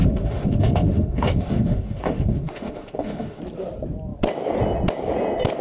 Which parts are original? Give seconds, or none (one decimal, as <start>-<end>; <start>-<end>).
3.4-5.6